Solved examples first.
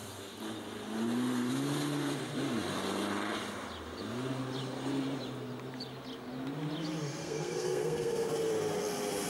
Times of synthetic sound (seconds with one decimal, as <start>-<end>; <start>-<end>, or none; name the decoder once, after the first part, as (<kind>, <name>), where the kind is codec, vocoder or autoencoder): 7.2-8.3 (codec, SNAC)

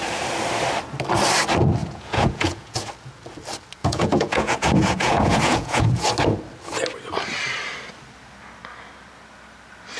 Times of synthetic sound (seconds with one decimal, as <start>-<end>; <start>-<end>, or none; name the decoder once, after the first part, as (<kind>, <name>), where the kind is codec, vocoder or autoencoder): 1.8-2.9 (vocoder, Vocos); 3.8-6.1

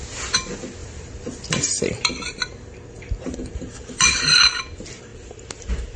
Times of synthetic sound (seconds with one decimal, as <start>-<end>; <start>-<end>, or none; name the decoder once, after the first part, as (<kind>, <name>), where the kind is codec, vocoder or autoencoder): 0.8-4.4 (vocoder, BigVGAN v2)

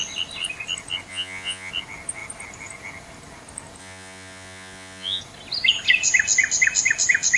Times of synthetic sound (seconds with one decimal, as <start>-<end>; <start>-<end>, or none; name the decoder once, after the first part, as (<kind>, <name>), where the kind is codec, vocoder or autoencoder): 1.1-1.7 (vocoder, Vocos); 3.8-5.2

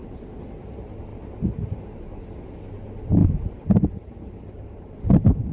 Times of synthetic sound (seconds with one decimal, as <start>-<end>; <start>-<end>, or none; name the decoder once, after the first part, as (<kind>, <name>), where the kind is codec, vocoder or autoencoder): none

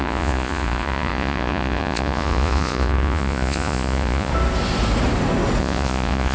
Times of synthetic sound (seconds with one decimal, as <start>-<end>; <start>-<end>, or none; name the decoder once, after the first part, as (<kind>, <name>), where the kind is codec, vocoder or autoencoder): 0.0-4.3 (vocoder, Vocos); 5.6-6.3

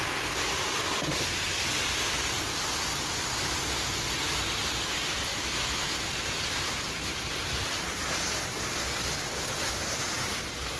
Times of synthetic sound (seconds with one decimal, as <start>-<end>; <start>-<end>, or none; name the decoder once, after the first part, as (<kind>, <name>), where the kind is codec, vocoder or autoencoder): 5.3-5.9 (autoencoder, DAC-VAE)

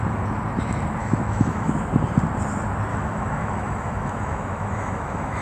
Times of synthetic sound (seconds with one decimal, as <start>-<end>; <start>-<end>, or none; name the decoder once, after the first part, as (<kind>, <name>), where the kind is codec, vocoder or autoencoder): 1.0-1.7 (autoencoder, DAC-VAE); 2.9-5.4